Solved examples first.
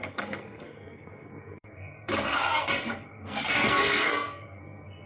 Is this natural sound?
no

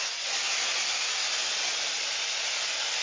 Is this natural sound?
yes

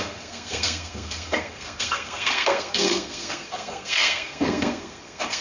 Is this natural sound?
no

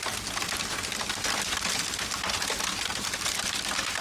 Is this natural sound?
yes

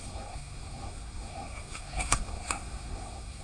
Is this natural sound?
no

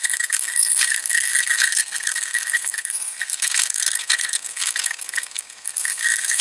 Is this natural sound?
no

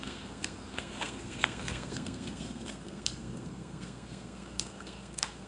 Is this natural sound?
no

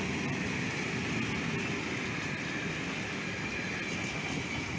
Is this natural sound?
yes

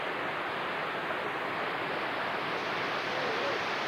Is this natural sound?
yes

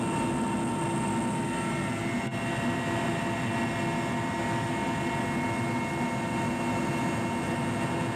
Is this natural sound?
yes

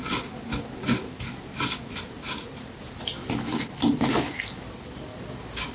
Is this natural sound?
yes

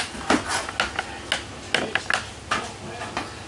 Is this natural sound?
yes